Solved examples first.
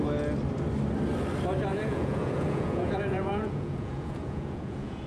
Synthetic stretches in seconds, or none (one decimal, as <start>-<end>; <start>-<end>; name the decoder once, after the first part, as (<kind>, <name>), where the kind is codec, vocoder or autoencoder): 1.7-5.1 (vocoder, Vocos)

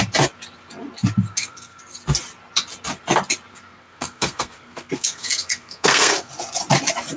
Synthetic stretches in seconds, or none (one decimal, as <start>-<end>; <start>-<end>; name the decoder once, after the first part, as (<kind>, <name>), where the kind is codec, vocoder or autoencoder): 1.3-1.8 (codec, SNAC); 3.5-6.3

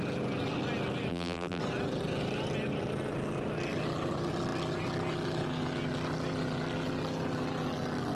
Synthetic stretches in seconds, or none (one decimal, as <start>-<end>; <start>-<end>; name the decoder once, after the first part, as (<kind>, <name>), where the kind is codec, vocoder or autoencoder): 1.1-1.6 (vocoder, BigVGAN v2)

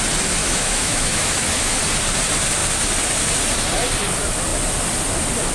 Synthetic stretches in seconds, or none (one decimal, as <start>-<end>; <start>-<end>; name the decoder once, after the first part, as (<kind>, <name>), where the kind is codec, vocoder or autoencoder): 0.4-1.8 (autoencoder, DAC-VAE)